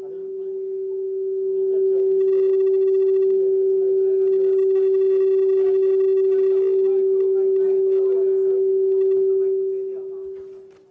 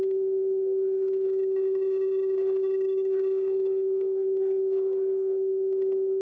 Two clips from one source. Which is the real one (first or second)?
first